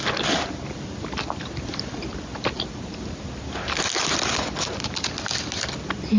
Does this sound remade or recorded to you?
recorded